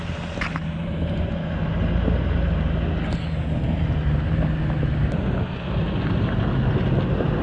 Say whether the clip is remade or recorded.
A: recorded